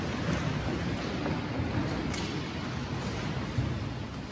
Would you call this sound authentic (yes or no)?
yes